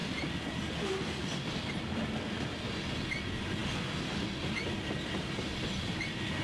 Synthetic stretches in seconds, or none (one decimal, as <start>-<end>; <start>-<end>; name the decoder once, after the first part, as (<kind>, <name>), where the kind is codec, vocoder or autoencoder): none